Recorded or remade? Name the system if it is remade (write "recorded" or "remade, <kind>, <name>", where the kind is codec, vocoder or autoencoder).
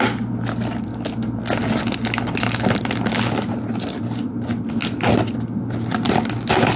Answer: recorded